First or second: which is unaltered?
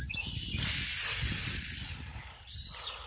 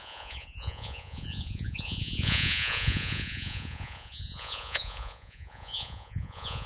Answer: first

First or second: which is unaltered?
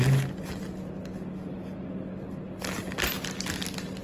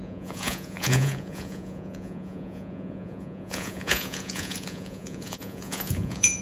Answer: first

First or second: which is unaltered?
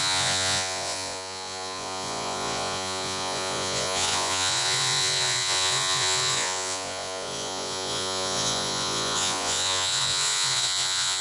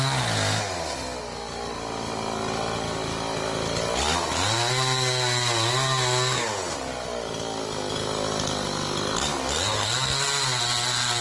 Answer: second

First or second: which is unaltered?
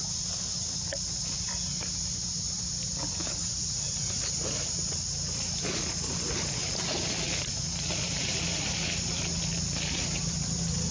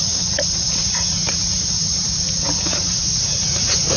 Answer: first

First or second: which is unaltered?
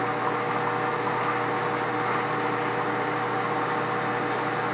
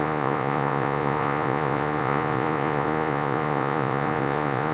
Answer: first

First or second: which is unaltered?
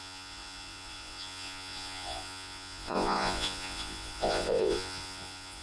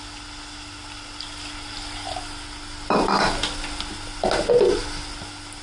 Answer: second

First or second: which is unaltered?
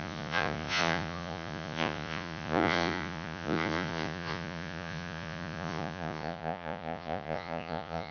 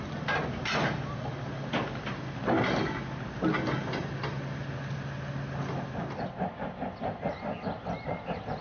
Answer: second